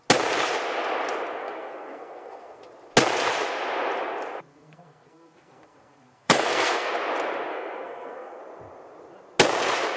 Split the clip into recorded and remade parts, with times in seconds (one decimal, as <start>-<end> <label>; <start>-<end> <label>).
0.0-1.4 recorded; 1.4-2.6 remade; 2.6-4.5 recorded; 4.5-6.9 remade; 6.9-7.5 recorded; 7.5-8.4 remade; 8.4-10.0 recorded